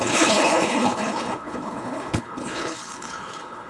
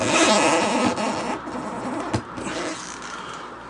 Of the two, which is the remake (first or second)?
first